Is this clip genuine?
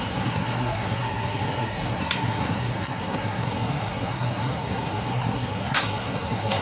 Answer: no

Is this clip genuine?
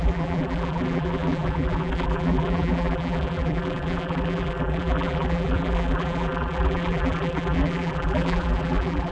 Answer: no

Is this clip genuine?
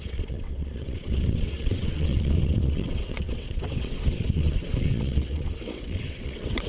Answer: no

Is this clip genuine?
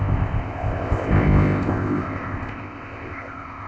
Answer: no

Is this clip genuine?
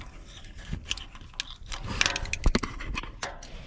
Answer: yes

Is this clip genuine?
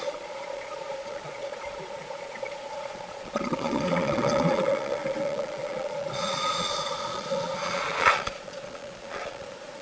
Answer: no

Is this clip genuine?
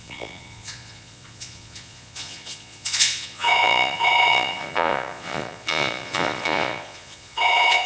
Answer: no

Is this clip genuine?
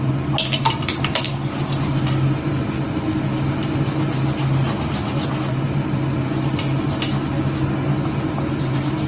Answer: yes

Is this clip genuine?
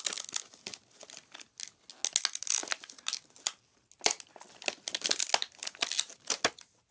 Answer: yes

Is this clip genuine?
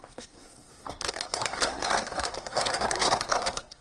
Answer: no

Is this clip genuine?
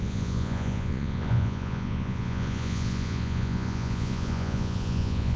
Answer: no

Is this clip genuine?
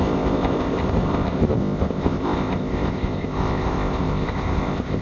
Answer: no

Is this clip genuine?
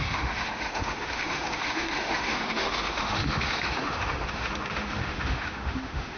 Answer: no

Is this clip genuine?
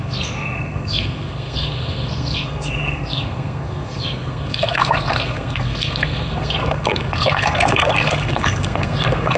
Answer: no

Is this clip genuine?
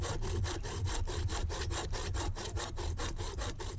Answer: yes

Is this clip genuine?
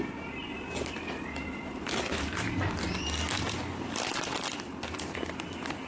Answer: yes